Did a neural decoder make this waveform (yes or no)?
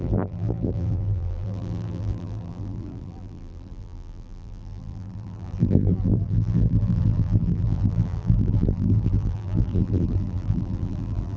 yes